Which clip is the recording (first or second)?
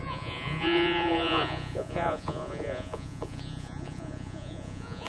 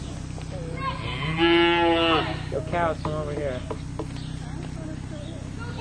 second